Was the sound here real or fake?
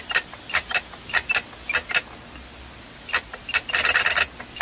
real